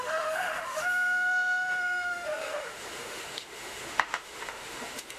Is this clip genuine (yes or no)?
no